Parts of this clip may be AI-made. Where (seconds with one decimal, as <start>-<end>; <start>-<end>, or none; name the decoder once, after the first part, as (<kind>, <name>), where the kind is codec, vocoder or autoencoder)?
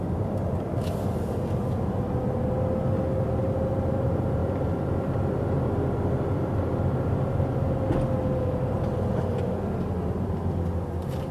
none